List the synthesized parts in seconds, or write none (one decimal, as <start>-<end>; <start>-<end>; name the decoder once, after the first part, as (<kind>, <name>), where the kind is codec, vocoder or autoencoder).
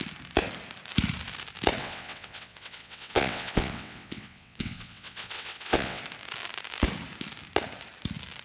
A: 1.8-6.0 (vocoder, WaveNeXt)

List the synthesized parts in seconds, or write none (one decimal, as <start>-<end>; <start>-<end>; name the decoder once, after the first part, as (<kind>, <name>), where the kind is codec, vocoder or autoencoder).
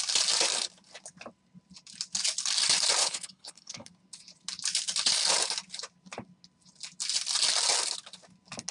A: 3.0-3.9 (codec, HILCodec)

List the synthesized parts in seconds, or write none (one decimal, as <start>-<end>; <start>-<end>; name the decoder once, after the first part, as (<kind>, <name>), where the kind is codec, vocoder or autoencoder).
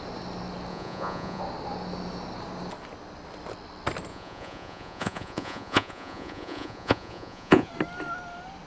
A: 0.7-1.4 (vocoder, Vocos); 4.1-7.7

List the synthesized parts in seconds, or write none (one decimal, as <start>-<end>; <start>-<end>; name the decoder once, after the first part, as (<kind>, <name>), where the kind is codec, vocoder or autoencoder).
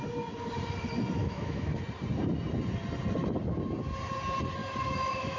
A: 1.2-1.8 (autoencoder, DAC-VAE); 4.6-5.4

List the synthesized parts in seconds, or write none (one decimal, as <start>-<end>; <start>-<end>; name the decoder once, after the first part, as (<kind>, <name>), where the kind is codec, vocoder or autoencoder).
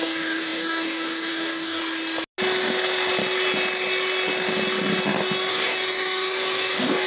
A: 0.0-1.8 (codec, DAC); 5.5-7.1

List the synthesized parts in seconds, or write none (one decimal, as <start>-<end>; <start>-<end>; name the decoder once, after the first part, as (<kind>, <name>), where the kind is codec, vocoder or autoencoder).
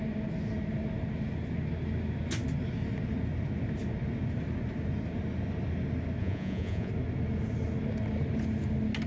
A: 6.2-6.9 (vocoder, Vocos)